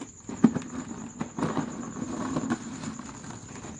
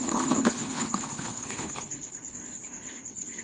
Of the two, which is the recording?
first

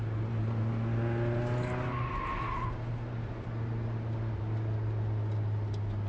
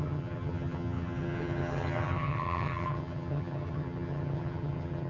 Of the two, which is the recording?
first